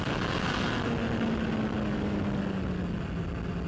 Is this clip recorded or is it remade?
recorded